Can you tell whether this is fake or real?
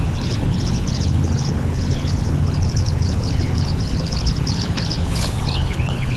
fake